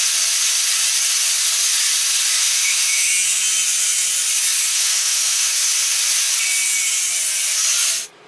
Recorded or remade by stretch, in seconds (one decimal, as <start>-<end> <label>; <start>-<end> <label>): 0.0-2.4 recorded; 2.4-3.1 remade; 3.1-4.7 recorded; 4.7-5.5 remade; 5.5-8.3 recorded